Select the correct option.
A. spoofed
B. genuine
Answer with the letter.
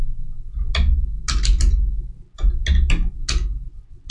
B